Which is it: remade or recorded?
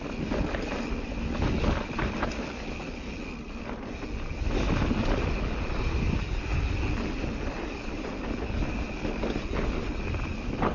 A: recorded